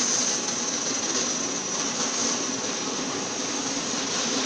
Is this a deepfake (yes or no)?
no